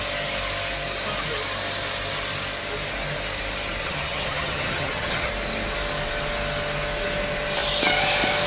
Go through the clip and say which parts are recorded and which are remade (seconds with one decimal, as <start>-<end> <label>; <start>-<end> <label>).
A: 0.0-3.8 recorded; 3.8-5.3 remade; 5.3-8.5 recorded